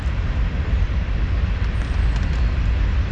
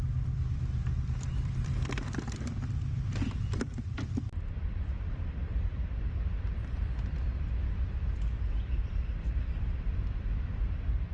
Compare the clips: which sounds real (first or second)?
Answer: first